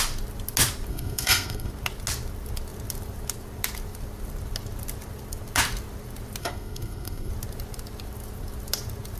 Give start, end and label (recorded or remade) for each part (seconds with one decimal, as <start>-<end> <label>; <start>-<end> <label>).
0.0-0.9 recorded; 0.9-1.7 remade; 1.7-6.4 recorded; 6.4-7.3 remade; 7.3-9.2 recorded